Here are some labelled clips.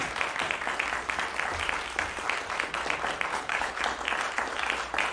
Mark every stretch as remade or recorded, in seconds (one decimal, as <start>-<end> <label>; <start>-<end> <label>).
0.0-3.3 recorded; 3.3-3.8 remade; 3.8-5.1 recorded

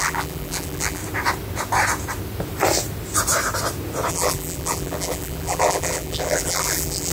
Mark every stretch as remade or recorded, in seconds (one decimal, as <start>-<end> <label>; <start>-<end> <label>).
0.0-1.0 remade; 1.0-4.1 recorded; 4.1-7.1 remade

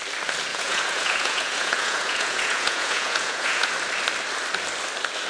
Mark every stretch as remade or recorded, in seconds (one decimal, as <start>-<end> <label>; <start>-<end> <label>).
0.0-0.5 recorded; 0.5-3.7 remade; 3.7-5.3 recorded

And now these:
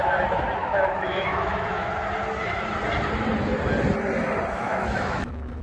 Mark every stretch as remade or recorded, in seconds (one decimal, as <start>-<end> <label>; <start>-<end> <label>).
0.0-0.6 recorded; 0.6-1.9 remade; 1.9-4.5 recorded; 4.5-5.6 remade